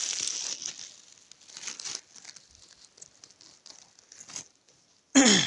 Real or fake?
real